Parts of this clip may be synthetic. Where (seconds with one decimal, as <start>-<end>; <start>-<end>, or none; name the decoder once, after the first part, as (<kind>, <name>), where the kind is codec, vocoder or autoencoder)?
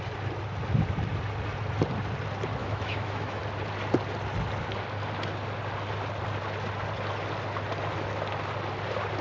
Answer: 2.6-3.4 (autoencoder, DAC-VAE)